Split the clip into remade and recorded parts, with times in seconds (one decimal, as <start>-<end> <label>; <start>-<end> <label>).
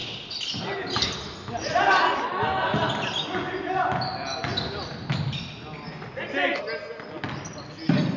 0.0-8.2 recorded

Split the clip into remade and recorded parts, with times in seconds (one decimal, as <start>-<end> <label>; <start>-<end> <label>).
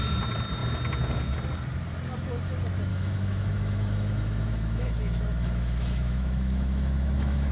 0.0-2.9 recorded; 2.9-7.5 remade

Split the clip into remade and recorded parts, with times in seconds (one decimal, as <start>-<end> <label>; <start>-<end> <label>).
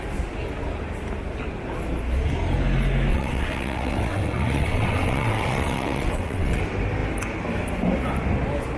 0.0-3.1 recorded; 3.1-6.6 remade; 6.6-8.8 recorded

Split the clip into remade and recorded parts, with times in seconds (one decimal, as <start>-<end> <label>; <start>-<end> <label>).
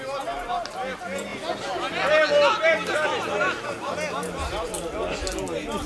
0.0-5.9 recorded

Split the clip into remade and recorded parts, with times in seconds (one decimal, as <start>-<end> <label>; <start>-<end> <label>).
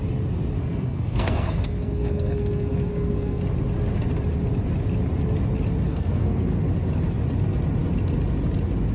0.0-0.6 recorded; 0.6-3.4 remade; 3.4-5.9 recorded; 5.9-6.6 remade; 6.6-8.9 recorded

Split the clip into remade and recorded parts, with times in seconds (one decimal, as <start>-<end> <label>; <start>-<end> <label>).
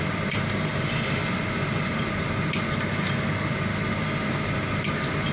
0.0-5.3 recorded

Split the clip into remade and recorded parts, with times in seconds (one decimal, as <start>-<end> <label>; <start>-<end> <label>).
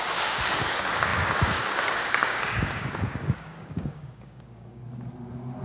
0.0-4.8 remade; 4.8-5.6 recorded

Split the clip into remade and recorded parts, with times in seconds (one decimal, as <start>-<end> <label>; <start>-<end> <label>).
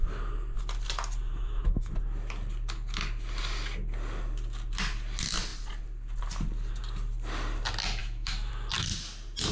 0.0-1.3 recorded; 1.3-1.9 remade; 1.9-8.0 recorded; 8.0-8.5 remade; 8.5-9.5 recorded